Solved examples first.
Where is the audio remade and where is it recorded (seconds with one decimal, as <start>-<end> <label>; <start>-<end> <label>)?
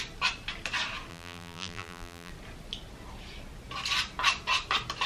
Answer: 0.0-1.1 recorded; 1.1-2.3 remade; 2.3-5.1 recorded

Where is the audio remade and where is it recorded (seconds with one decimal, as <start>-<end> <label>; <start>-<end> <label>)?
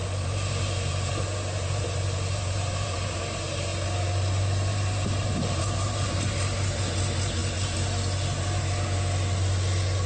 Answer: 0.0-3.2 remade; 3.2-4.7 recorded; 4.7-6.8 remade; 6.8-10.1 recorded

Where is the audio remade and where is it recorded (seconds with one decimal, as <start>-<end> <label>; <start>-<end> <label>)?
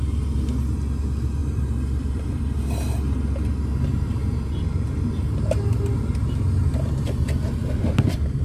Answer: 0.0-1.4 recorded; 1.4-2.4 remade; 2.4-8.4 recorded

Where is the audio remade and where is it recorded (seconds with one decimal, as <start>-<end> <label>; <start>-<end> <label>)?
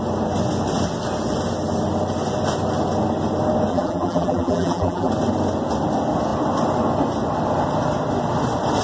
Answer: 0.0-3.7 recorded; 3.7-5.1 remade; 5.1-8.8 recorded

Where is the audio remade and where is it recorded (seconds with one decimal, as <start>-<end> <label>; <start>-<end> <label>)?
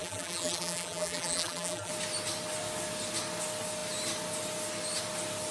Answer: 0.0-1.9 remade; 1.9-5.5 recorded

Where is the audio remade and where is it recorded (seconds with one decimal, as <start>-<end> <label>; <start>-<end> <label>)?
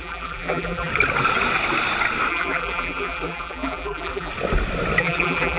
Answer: 0.0-0.9 remade; 0.9-2.3 recorded; 2.3-4.3 remade; 4.3-5.0 recorded; 5.0-5.6 remade